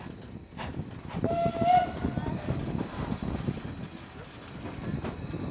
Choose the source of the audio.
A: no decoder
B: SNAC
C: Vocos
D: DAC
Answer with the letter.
A